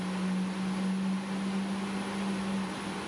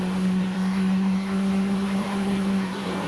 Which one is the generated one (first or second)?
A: second